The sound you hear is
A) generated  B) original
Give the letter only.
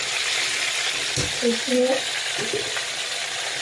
B